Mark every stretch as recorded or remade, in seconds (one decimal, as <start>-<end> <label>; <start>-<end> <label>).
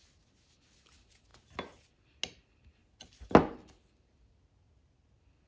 0.0-5.5 recorded